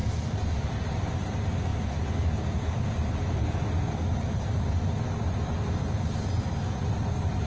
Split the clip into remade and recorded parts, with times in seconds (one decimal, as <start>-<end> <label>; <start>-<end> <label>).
0.0-0.9 recorded; 0.9-1.7 remade; 1.7-6.2 recorded; 6.2-7.5 remade